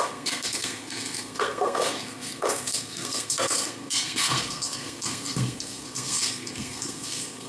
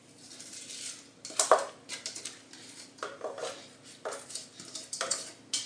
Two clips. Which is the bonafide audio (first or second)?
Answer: second